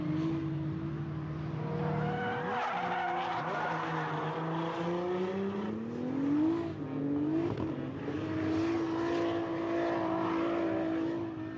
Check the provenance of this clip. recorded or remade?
recorded